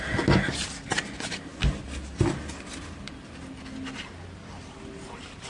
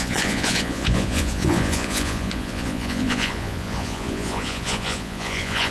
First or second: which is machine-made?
second